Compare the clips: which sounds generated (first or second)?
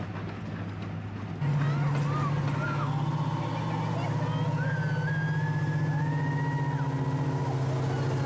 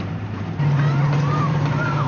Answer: second